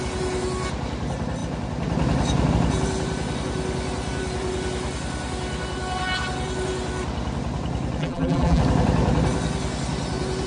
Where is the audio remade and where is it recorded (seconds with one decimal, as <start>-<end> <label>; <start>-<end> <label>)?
0.0-8.0 recorded; 8.0-8.6 remade; 8.6-10.5 recorded